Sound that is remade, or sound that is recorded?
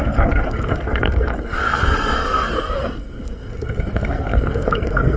remade